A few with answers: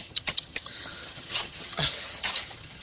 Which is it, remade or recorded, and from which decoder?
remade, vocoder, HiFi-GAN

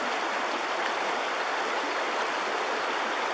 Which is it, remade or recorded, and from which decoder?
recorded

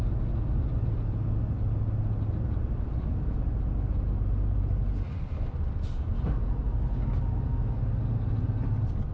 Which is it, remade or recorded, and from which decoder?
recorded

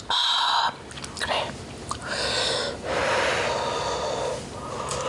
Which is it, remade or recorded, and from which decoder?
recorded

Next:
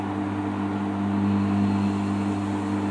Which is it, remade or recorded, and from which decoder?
remade, vocoder, BigVGAN v2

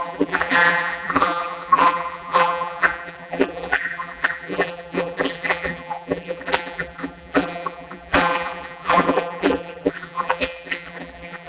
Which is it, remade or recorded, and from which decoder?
remade, vocoder, BigVGAN v2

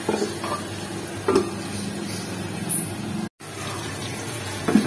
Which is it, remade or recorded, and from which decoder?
recorded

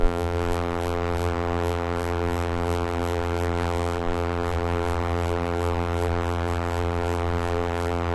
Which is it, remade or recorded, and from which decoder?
remade, vocoder, BigVGAN v2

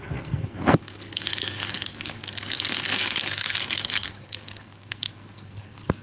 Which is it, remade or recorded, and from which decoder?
remade, codec, SNAC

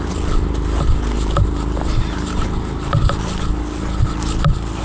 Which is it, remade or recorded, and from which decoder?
recorded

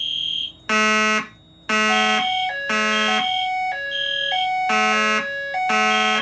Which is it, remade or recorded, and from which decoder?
recorded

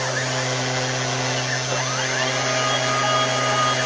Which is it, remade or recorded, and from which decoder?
recorded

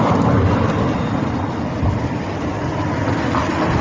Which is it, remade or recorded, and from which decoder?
remade, vocoder, BigVGAN v2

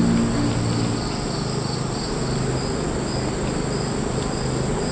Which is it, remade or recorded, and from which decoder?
recorded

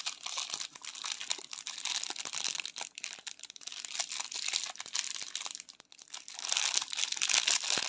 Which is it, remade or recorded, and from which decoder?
recorded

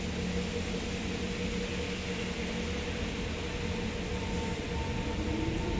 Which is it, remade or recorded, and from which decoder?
recorded